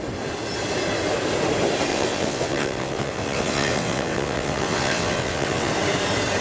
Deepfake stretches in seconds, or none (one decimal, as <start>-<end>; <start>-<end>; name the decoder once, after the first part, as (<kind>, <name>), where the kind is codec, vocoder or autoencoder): 1.9-5.7 (vocoder, WaveNeXt)